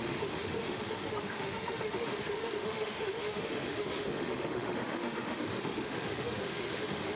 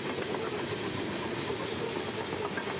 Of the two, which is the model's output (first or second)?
first